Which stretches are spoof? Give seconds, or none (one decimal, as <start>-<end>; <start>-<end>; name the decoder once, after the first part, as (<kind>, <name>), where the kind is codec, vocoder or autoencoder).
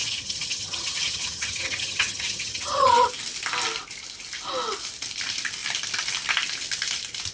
0.0-3.1 (vocoder, HiFi-GAN)